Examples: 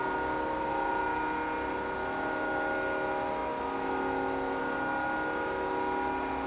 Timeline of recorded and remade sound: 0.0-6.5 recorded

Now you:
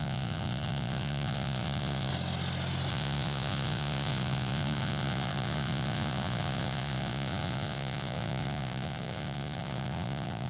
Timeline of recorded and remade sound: 0.0-2.1 remade; 2.1-2.9 recorded; 2.9-10.5 remade

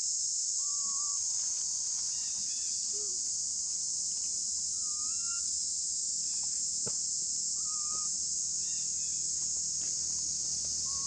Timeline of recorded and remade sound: 0.0-11.1 recorded

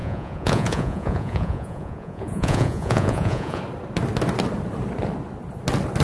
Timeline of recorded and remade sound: 0.0-3.6 remade; 3.6-6.0 recorded

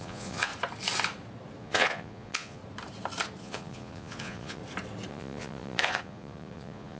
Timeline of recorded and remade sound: 0.0-0.5 remade; 0.5-1.6 recorded; 1.6-2.6 remade; 2.6-3.4 recorded; 3.4-4.6 remade; 4.6-5.1 recorded; 5.1-7.0 remade

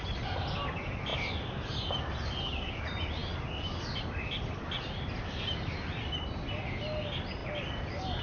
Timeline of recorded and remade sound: 0.0-8.2 recorded

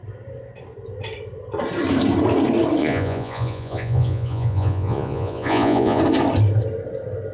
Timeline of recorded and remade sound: 0.0-2.8 recorded; 2.8-6.0 remade; 6.0-7.3 recorded

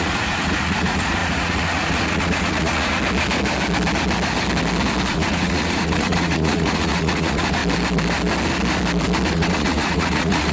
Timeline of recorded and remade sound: 0.0-3.0 remade; 3.0-5.1 recorded; 5.1-7.6 remade; 7.6-9.3 recorded; 9.3-10.5 remade